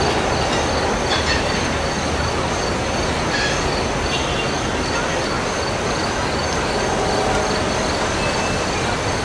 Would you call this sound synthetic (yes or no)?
no